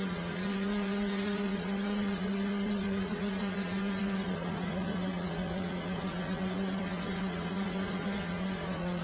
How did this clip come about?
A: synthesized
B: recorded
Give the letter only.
A